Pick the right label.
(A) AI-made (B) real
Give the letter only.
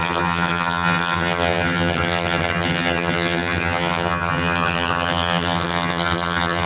A